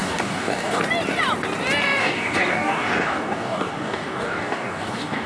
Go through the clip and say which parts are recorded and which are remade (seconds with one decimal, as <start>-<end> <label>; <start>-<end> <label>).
0.0-0.8 remade; 0.8-2.0 recorded; 2.0-5.3 remade